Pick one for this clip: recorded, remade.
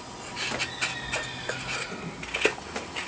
recorded